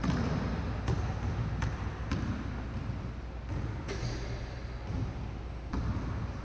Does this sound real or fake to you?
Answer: real